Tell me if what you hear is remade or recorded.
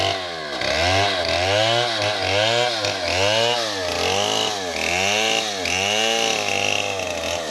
recorded